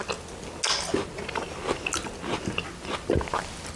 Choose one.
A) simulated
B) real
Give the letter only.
B